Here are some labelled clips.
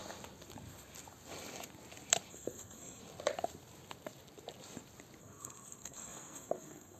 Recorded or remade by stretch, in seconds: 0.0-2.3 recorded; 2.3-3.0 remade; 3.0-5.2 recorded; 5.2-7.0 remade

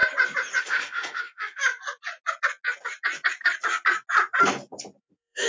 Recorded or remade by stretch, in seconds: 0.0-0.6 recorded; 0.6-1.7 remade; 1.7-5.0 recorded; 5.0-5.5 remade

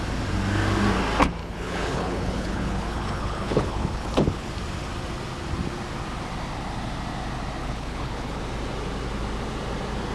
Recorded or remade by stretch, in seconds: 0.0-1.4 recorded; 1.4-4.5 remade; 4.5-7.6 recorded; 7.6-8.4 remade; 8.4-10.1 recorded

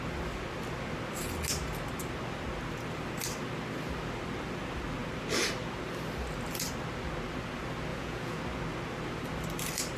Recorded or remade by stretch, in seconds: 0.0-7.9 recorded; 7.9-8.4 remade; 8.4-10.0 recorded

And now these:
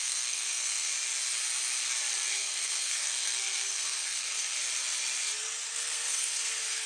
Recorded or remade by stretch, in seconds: 0.0-0.9 remade; 0.9-2.3 recorded; 2.3-4.6 remade; 4.6-5.7 recorded; 5.7-6.9 remade

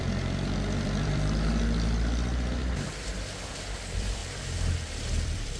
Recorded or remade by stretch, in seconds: 0.0-2.6 remade; 2.6-3.8 recorded; 3.8-4.2 remade; 4.2-4.7 recorded; 4.7-5.6 remade

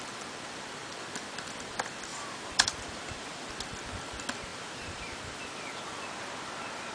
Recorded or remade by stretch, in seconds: 0.0-2.1 recorded; 2.1-3.5 remade; 3.5-4.5 recorded; 4.5-5.4 remade; 5.4-6.9 recorded